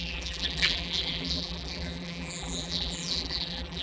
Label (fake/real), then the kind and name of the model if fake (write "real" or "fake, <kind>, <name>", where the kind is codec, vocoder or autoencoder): fake, vocoder, BigVGAN v2